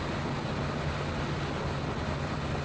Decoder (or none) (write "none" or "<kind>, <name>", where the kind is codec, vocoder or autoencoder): none